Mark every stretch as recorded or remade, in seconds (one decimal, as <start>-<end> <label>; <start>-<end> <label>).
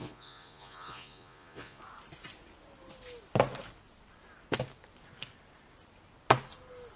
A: 0.0-1.8 remade; 1.8-7.0 recorded